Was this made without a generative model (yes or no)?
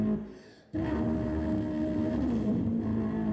yes